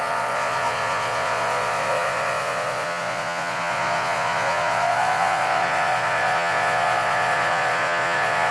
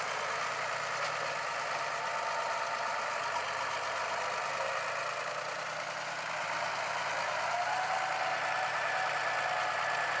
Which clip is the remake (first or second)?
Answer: first